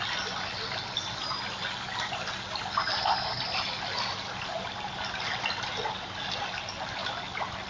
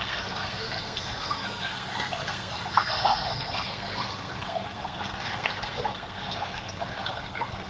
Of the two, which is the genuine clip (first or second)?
first